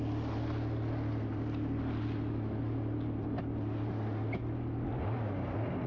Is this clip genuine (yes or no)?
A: yes